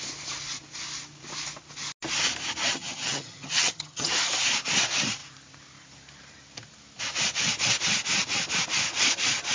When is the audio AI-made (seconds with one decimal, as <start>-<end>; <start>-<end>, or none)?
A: 2.7-4.1

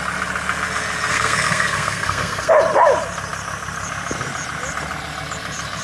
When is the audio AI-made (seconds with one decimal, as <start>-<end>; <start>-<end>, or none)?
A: 1.1-2.5

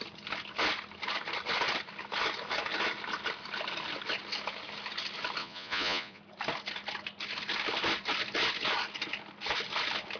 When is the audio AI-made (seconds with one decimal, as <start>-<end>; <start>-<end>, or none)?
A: 5.4-6.2